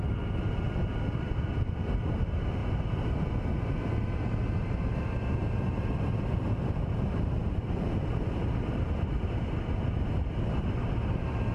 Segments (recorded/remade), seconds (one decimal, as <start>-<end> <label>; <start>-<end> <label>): 0.0-2.6 recorded; 2.6-3.2 remade; 3.2-5.4 recorded; 5.4-7.2 remade; 7.2-11.5 recorded